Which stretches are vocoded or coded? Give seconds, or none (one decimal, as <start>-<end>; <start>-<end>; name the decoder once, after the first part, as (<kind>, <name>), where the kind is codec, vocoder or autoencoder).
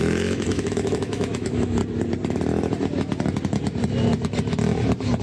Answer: 0.0-1.8 (autoencoder, DAC-VAE)